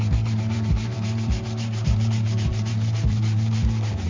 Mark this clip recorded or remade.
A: remade